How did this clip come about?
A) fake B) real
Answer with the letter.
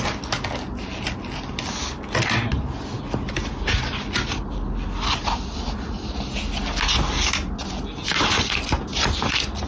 B